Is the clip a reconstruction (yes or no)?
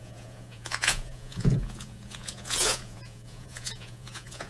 yes